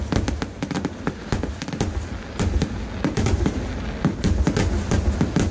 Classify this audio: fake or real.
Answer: real